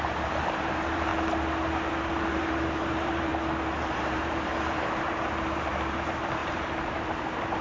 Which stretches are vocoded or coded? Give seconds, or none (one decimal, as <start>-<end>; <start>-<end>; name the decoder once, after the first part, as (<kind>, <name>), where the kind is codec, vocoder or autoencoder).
0.0-1.1 (vocoder, BigVGAN v2); 1.9-3.3; 3.9-7.6